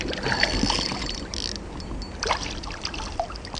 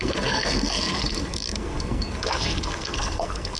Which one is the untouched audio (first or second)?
first